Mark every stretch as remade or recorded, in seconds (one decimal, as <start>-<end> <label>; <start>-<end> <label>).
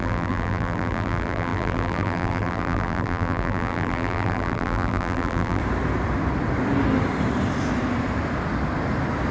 0.0-5.6 remade; 5.6-9.3 recorded